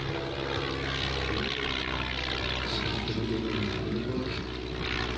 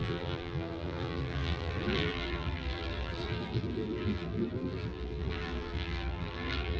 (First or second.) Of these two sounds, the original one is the first